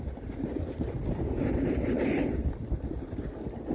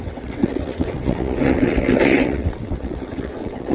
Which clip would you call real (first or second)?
first